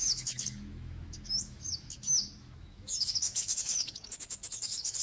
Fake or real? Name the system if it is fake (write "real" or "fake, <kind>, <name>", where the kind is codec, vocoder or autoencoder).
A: fake, autoencoder, DAC-VAE